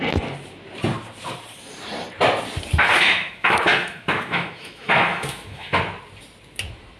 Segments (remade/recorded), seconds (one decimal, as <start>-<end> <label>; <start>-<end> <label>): 0.0-2.9 recorded; 2.9-5.8 remade; 5.8-7.0 recorded